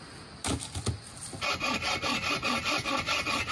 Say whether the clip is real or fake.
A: real